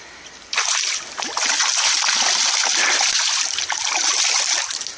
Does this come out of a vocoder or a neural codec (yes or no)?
no